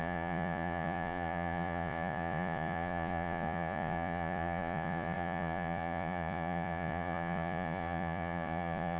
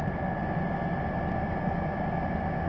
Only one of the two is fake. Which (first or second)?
first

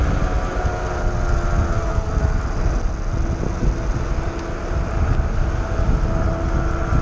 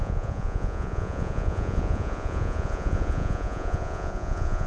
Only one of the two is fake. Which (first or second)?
second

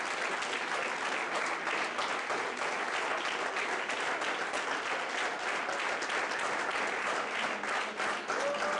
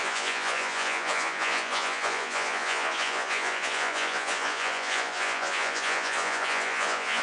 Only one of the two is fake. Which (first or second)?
second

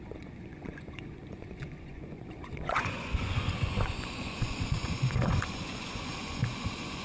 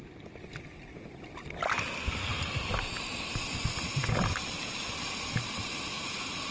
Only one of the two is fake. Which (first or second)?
first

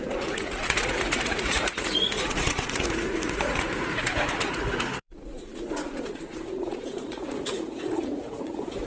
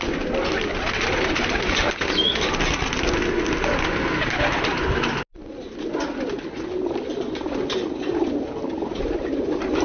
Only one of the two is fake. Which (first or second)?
first